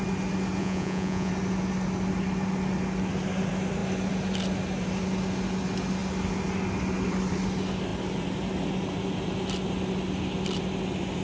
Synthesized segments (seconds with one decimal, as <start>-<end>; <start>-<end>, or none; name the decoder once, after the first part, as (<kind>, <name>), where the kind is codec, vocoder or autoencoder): 0.6-1.3 (vocoder, Vocos)